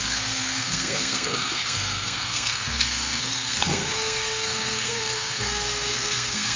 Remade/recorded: remade